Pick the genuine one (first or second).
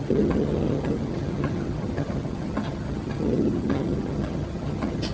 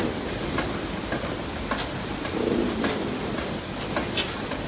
second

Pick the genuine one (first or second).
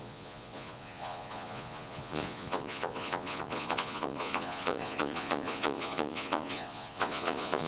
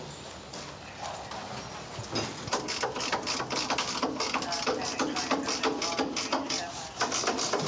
second